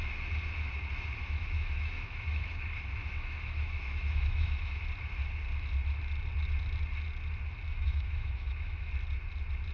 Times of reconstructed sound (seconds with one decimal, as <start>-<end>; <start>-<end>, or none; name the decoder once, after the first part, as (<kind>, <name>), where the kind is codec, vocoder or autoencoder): 1.2-4.8 (autoencoder, DAC-VAE); 7.7-8.9